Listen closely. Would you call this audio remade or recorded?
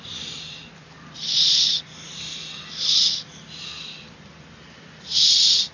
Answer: recorded